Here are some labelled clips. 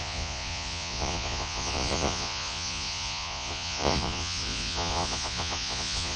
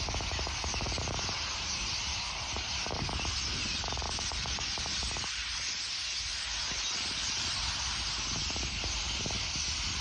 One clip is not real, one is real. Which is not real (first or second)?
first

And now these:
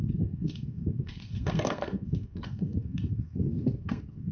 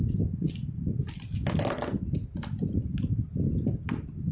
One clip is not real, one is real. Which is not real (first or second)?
first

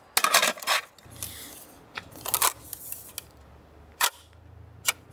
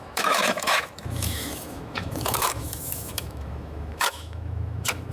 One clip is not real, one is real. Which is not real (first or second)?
second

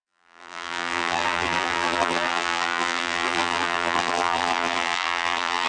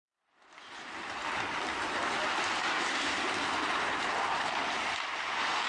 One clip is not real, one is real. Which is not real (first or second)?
first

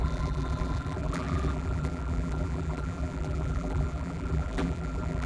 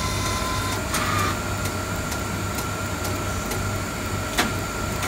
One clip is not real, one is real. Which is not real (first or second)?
first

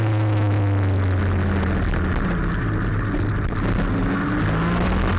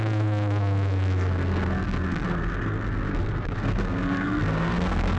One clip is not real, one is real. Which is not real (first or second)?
second